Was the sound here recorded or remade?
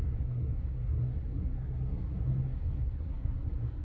remade